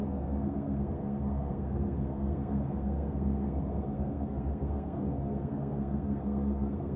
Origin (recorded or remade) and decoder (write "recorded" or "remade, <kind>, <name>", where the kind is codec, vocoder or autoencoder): remade, codec, SNAC